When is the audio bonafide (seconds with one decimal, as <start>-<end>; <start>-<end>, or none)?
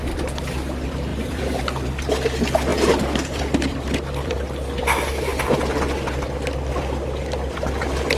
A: 0.0-1.1; 1.6-2.7; 4.3-8.2